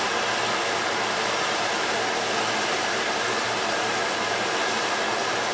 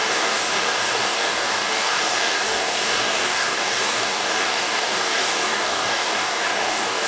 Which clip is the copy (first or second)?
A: second